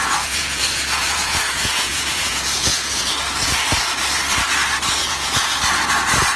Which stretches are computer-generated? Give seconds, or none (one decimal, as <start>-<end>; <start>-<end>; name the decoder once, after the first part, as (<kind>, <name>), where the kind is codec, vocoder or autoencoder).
0.0-3.1 (vocoder, Vocos); 5.0-5.6